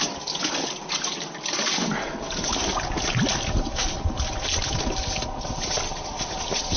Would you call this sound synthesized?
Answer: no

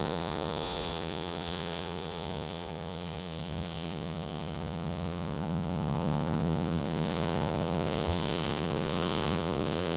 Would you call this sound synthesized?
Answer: yes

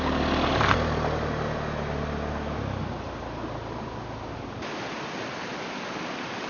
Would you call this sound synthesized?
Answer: no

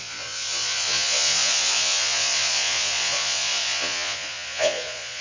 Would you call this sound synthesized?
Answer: yes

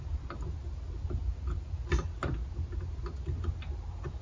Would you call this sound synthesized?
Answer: no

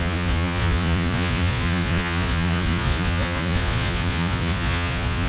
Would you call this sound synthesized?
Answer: yes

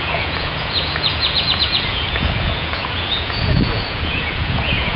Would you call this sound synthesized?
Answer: yes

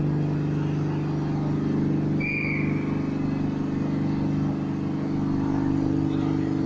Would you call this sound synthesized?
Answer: no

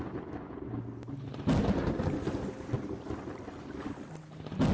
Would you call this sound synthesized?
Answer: no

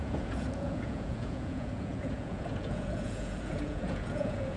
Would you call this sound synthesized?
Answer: yes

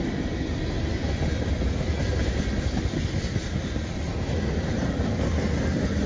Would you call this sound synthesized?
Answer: no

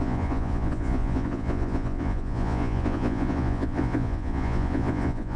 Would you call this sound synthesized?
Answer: yes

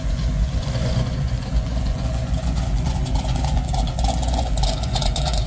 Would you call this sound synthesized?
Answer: yes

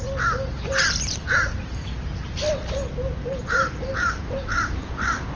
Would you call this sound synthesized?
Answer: no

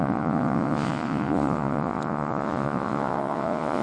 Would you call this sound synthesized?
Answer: yes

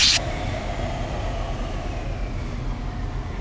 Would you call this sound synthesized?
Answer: no